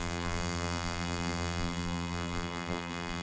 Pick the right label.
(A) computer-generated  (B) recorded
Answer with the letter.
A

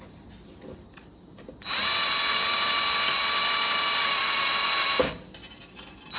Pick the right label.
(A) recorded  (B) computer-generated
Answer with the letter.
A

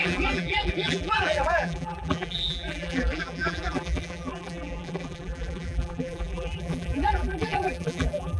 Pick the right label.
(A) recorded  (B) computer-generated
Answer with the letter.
B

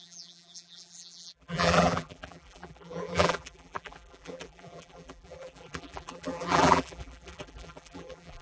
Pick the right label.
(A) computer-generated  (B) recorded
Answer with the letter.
A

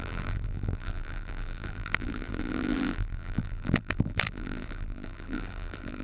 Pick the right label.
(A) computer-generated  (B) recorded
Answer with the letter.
A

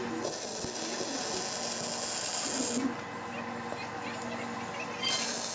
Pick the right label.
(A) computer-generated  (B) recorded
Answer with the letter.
B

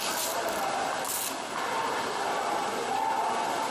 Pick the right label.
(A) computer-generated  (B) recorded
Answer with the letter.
B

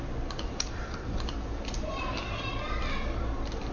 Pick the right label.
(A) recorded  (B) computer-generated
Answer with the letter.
B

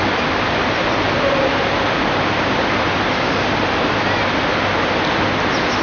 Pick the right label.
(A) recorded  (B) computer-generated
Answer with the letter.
A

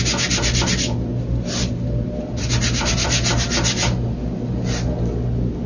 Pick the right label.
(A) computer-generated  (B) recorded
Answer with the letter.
B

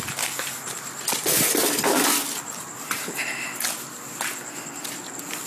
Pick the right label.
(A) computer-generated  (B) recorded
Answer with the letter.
B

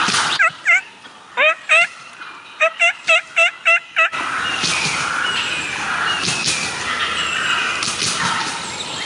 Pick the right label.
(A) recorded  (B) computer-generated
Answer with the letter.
A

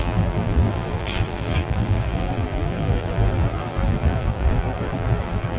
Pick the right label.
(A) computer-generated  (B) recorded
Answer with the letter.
A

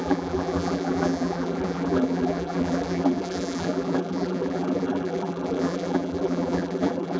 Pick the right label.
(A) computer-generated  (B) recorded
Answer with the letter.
A